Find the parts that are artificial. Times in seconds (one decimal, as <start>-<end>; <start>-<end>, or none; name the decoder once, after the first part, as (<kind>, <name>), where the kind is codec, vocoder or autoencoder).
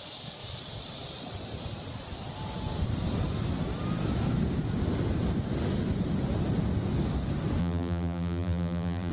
7.6-9.1 (vocoder, BigVGAN v2)